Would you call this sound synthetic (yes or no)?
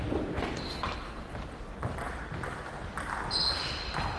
no